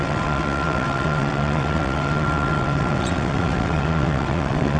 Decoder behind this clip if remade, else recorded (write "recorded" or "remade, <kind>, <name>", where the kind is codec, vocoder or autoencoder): remade, vocoder, WaveNeXt